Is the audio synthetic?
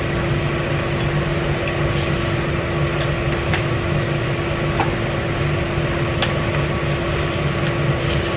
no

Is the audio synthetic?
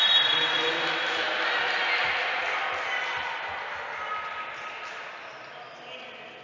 no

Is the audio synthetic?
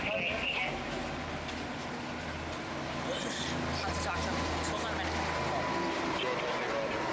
no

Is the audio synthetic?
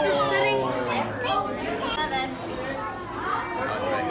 no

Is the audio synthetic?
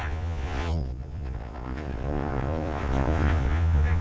yes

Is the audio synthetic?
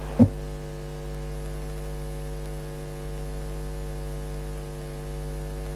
no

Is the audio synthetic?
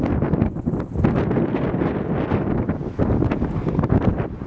no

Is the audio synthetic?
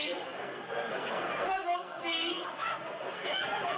yes